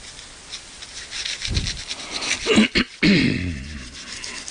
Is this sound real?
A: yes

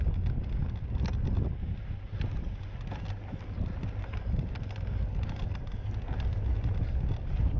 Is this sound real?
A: yes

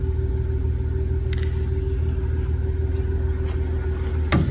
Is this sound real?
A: yes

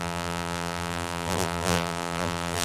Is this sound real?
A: no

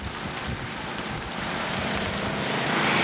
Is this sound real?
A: yes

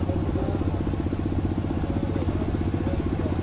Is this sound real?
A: yes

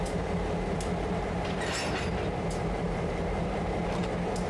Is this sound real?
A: no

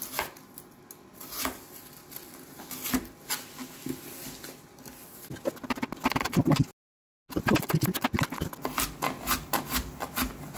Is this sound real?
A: yes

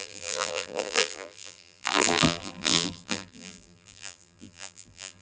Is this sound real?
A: no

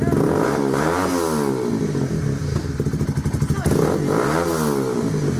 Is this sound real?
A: yes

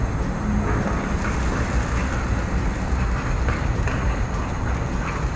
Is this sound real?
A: yes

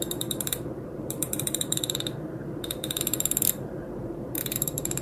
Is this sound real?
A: no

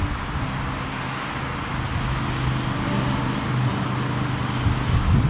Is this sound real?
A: yes